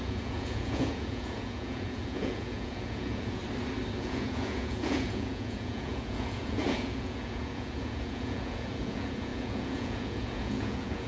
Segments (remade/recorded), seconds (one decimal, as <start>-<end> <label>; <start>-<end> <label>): 0.0-3.4 remade; 3.4-4.0 recorded; 4.0-11.1 remade